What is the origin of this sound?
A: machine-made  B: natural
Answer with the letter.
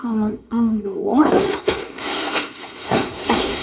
A